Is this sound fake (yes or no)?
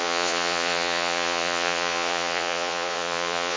yes